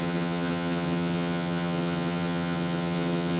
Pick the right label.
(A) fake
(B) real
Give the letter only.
A